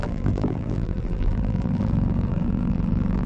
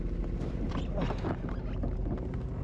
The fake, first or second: first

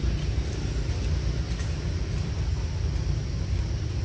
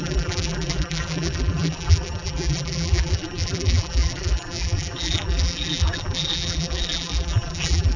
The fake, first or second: second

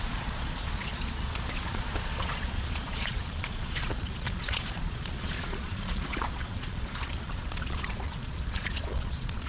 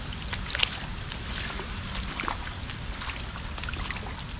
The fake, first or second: first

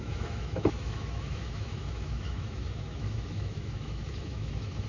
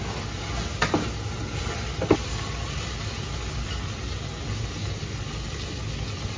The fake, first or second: first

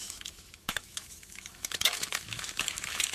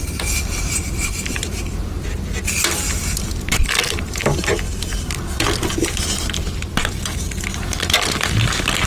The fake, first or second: first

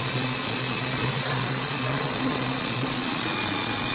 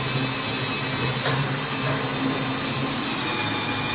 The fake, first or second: first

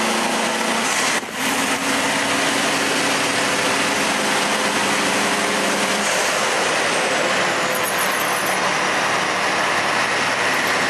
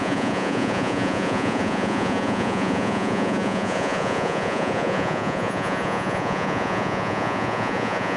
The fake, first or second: second